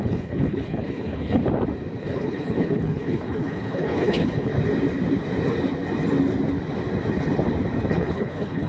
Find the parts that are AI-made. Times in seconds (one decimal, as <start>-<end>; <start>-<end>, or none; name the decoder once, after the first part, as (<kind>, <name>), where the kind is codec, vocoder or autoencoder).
0.0-1.4 (codec, HILCodec); 2.0-4.5; 7.9-8.7